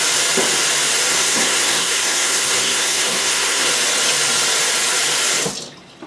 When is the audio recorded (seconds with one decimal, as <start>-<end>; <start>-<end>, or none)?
0.0-1.1; 3.7-6.1